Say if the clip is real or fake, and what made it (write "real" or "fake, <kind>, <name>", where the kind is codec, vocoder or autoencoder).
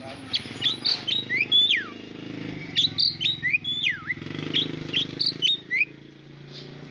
real